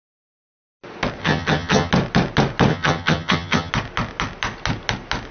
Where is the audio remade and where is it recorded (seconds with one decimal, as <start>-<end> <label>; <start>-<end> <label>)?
0.0-1.2 recorded; 1.2-1.9 remade; 1.9-2.7 recorded; 2.7-3.7 remade; 3.7-5.3 recorded

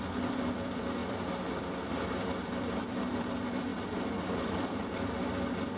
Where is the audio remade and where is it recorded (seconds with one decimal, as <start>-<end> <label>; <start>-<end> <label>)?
0.0-3.7 remade; 3.7-4.3 recorded; 4.3-5.8 remade

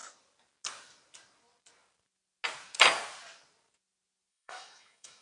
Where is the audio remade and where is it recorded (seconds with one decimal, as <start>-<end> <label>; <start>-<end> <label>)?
0.0-4.3 recorded; 4.3-5.2 remade

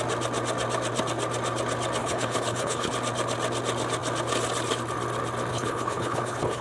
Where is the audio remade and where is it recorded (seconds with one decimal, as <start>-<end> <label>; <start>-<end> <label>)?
0.0-2.0 recorded; 2.0-2.9 remade; 2.9-5.5 recorded; 5.5-6.6 remade

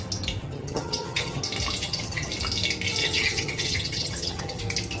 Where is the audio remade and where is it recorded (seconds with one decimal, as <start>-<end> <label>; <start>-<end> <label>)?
0.0-0.4 recorded; 0.4-1.4 remade; 1.4-1.8 recorded; 1.8-2.3 remade; 2.3-3.0 recorded; 3.0-4.6 remade; 4.6-5.0 recorded

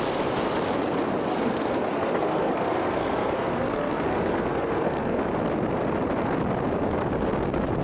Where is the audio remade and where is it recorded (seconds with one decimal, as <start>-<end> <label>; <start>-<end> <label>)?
0.0-1.2 recorded; 1.2-5.2 remade; 5.2-7.8 recorded

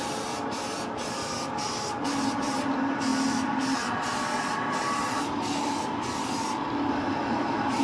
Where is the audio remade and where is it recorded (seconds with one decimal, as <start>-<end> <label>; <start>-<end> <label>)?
0.0-7.8 recorded

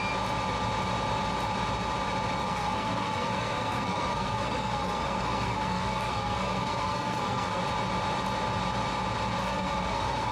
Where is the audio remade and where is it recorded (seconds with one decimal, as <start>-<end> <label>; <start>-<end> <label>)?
0.0-2.4 recorded; 2.4-7.6 remade; 7.6-9.4 recorded; 9.4-10.3 remade